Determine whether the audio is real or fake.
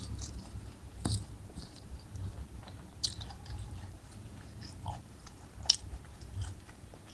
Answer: fake